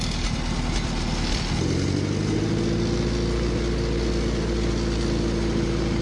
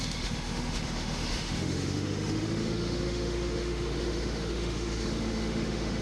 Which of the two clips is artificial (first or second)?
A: second